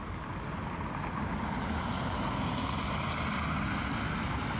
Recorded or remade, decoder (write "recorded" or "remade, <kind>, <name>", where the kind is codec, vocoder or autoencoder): recorded